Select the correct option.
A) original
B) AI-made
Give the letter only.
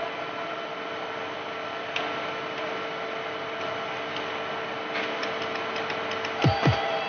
A